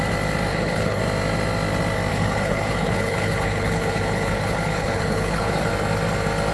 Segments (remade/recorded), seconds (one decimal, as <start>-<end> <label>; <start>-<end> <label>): 0.0-0.5 recorded; 0.5-1.0 remade; 1.0-2.1 recorded; 2.1-5.7 remade; 5.7-6.5 recorded